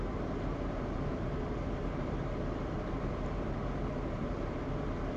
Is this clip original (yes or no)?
no